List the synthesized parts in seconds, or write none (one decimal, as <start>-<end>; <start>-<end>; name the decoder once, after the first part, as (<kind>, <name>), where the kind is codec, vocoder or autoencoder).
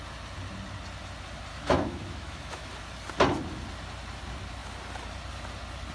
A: 1.5-2.7 (autoencoder, DAC-VAE)